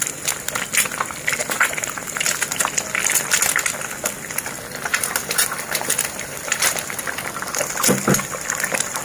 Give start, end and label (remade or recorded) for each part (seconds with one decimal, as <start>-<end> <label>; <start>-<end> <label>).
0.0-1.4 recorded; 1.4-2.7 remade; 2.7-4.9 recorded; 4.9-7.0 remade; 7.0-9.0 recorded

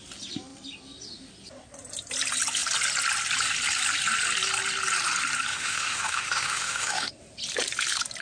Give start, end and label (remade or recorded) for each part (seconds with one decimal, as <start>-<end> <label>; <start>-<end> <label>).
0.0-5.5 recorded; 5.5-7.1 remade; 7.1-8.2 recorded

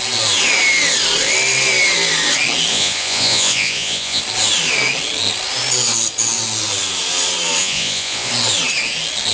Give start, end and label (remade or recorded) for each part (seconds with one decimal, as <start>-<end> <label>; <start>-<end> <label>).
0.0-2.7 recorded; 2.7-4.2 remade; 4.2-7.6 recorded; 7.6-8.3 remade; 8.3-9.3 recorded

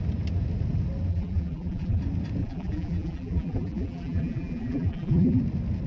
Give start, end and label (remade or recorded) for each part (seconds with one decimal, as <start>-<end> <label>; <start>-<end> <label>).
0.0-1.1 recorded; 1.1-2.0 remade; 2.0-2.4 recorded; 2.4-5.4 remade; 5.4-5.9 recorded

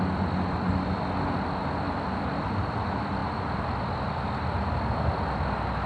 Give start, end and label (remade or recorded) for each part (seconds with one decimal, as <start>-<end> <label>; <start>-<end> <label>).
0.0-5.9 recorded